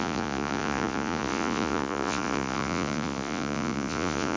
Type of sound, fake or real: fake